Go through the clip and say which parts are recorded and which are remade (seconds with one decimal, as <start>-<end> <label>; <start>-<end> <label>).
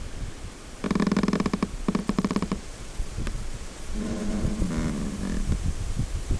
0.0-2.0 recorded; 2.0-4.7 remade; 4.7-6.4 recorded